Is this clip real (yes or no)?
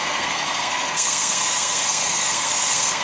no